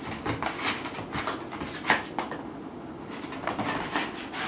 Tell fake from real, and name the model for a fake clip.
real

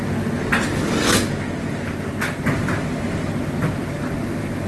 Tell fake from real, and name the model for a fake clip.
real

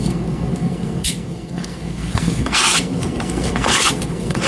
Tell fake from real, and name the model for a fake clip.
fake, codec, SNAC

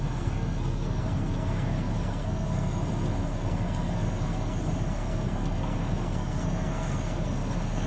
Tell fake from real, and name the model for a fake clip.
fake, codec, SNAC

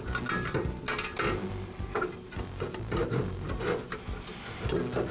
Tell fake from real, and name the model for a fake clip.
real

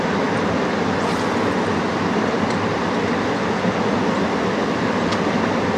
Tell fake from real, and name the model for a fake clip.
real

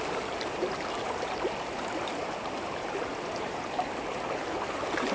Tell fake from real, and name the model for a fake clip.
fake, vocoder, BigVGAN v2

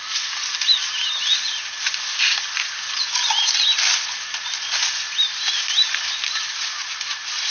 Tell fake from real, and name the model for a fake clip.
real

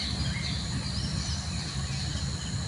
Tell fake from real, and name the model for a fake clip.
real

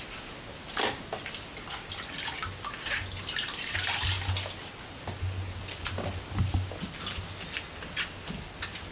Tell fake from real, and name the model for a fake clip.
real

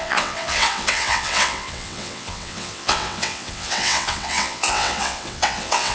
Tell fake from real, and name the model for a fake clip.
fake, vocoder, WaveNeXt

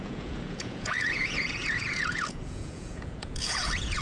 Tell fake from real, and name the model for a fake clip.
fake, vocoder, Vocos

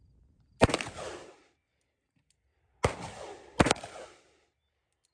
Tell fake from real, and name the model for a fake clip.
real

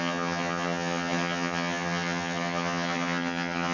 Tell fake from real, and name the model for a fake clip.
fake, vocoder, HiFi-GAN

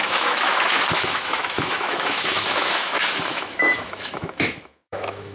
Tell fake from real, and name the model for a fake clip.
fake, autoencoder, DAC-VAE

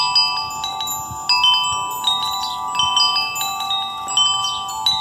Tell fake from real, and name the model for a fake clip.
real